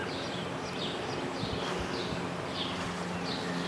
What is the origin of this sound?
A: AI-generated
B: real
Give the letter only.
B